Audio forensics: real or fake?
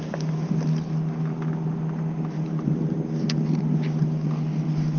real